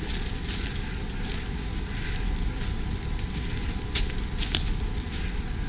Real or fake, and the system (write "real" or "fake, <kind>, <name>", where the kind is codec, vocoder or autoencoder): real